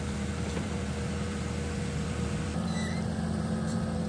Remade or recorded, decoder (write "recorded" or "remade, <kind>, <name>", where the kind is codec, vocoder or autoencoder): remade, vocoder, BigVGAN v2